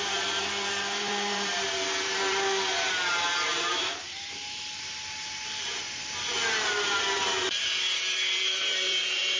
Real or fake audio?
fake